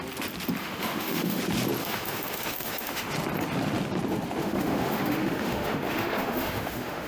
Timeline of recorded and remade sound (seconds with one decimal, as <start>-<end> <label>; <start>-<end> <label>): 0.0-0.6 recorded; 0.6-1.4 remade; 1.4-1.8 recorded; 1.8-3.1 remade; 3.1-4.4 recorded; 4.4-7.1 remade